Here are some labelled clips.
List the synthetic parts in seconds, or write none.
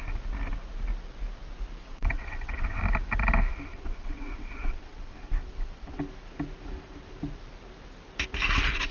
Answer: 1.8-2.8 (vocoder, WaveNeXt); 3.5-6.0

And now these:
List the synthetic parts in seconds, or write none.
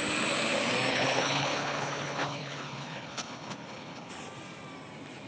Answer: 0.9-4.1 (codec, HILCodec)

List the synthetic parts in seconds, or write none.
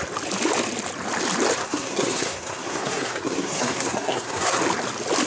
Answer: 1.6-4.6 (codec, SNAC)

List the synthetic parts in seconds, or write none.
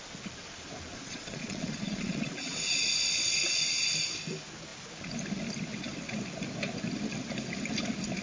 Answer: 0.9-2.6 (vocoder, Vocos)